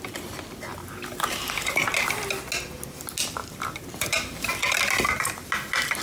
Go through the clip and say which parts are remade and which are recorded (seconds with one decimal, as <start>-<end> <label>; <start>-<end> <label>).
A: 0.0-0.7 recorded; 0.7-1.8 remade; 1.8-3.4 recorded; 3.4-4.5 remade; 4.5-6.0 recorded